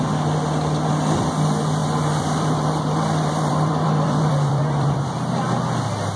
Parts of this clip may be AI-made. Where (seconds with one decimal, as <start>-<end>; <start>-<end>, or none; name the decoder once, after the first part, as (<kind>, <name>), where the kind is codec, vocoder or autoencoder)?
1.8-5.5 (vocoder, BigVGAN v2)